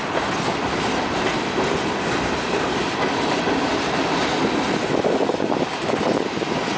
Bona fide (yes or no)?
yes